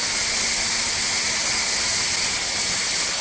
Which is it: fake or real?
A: real